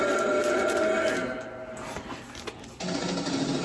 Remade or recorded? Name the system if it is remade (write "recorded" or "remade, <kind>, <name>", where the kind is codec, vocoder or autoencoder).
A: recorded